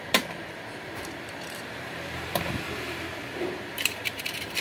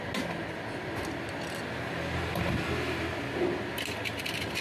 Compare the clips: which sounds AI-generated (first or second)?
first